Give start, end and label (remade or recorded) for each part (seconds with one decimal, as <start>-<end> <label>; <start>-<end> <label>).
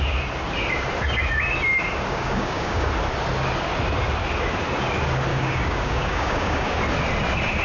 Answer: 0.0-2.1 recorded; 2.1-2.9 remade; 2.9-5.3 recorded; 5.3-6.8 remade; 6.8-7.6 recorded